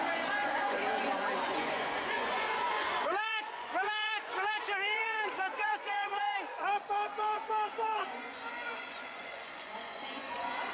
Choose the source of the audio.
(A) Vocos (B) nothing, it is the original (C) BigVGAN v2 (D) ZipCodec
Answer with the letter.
A